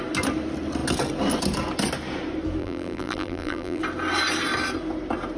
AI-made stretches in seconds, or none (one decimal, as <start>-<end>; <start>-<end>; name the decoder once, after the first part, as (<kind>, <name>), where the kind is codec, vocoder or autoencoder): 2.6-3.8 (vocoder, BigVGAN v2)